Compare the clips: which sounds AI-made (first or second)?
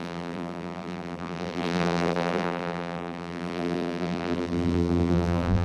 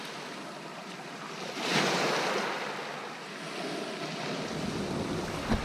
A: first